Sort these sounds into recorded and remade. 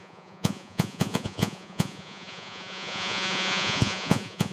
remade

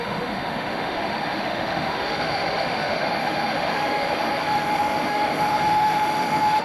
remade